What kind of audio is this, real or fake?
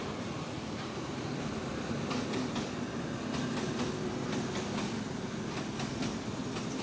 real